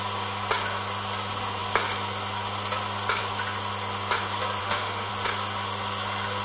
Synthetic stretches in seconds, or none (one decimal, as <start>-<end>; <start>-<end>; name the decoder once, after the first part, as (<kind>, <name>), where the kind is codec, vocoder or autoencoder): 4.6-5.1 (autoencoder, DAC-VAE)